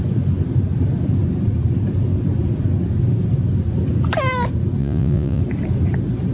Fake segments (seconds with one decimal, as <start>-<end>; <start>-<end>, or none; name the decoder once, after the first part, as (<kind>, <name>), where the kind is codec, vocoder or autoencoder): 4.8-5.4 (vocoder, Vocos)